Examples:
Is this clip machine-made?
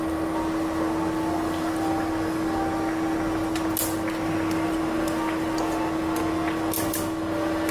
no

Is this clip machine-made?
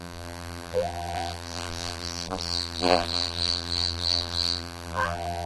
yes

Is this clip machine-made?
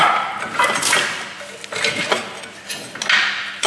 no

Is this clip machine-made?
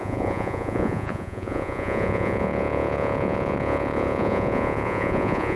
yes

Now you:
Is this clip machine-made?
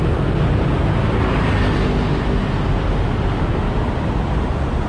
no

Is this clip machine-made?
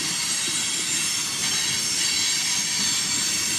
no